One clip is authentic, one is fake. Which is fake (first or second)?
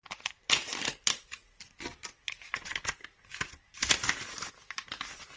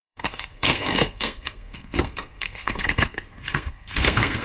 second